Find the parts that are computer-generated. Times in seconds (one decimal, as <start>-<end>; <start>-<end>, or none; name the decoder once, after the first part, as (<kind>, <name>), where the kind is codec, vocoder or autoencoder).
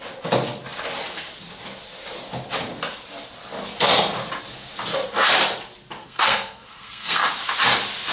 6.0-7.3 (codec, SNAC)